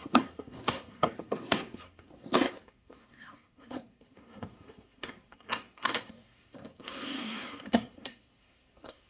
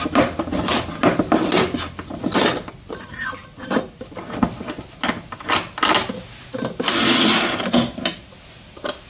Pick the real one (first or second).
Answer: second